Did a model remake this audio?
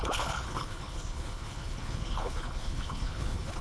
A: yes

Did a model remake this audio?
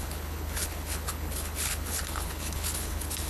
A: yes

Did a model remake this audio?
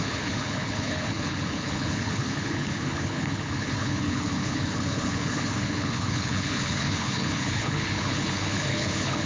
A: yes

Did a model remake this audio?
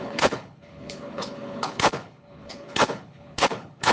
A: yes